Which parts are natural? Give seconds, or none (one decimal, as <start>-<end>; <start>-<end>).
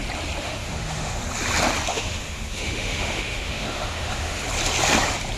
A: 0.0-0.4; 1.2-1.9; 4.4-5.4